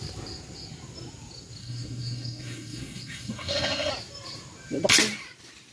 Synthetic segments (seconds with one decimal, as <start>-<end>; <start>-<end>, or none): 1.6-3.9

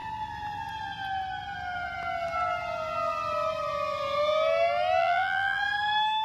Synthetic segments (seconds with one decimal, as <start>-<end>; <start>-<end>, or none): 5.0-5.6

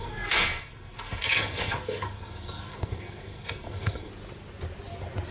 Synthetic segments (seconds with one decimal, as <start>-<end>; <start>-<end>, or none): 0.0-4.1